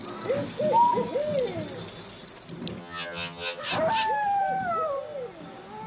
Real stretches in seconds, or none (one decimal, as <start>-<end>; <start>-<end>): 0.0-2.8; 3.6-5.9